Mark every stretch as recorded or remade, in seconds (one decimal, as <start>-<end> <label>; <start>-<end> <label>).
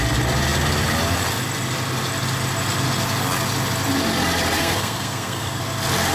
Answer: 0.0-4.6 recorded; 4.6-5.6 remade; 5.6-6.1 recorded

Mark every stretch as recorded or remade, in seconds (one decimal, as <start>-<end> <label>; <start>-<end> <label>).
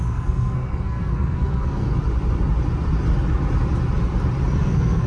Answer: 0.0-1.9 remade; 1.9-4.6 recorded; 4.6-5.1 remade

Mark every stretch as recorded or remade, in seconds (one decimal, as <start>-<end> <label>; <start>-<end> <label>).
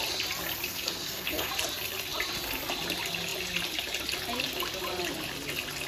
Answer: 0.0-0.7 recorded; 0.7-1.5 remade; 1.5-5.9 recorded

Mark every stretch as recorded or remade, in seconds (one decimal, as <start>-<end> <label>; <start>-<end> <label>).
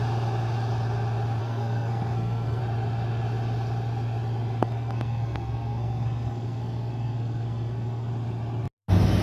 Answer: 0.0-1.4 recorded; 1.4-2.6 remade; 2.6-4.6 recorded; 4.6-8.1 remade; 8.1-9.2 recorded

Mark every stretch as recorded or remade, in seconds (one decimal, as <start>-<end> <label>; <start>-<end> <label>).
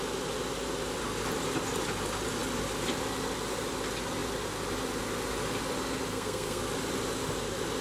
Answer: 0.0-6.1 recorded; 6.1-6.6 remade; 6.6-7.8 recorded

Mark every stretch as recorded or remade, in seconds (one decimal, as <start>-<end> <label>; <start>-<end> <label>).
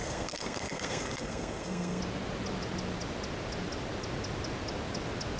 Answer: 0.0-2.0 remade; 2.0-5.4 recorded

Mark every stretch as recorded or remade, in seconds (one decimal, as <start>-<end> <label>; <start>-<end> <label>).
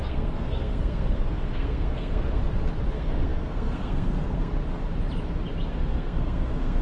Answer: 0.0-2.4 remade; 2.4-2.9 recorded; 2.9-4.5 remade; 4.5-5.7 recorded; 5.7-6.8 remade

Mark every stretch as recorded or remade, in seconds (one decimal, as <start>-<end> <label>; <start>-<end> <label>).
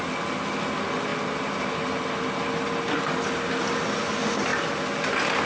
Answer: 0.0-5.5 recorded